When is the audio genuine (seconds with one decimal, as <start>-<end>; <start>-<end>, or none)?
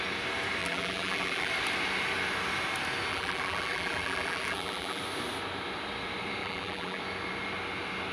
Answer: 0.0-0.6; 1.5-3.1; 5.0-6.4; 7.0-8.1